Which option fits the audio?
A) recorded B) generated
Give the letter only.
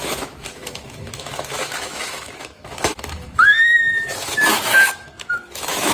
B